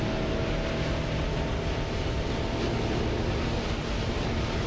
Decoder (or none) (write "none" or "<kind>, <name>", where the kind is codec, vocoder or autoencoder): none